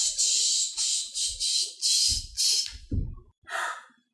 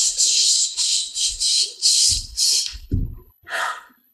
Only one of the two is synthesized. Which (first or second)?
second